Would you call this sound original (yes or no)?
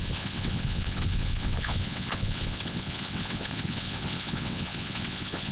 no